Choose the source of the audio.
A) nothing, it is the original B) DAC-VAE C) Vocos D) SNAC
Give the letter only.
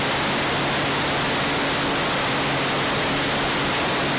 A